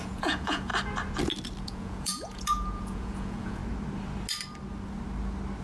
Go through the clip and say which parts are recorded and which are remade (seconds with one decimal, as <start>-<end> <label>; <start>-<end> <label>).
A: 0.0-0.7 remade; 0.7-1.6 recorded; 1.6-3.6 remade; 3.6-5.6 recorded